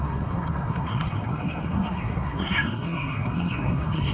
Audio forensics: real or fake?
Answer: fake